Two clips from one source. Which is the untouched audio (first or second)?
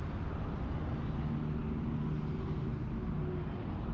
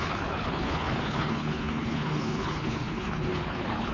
first